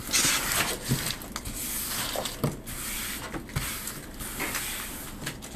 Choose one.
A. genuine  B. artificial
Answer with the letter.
A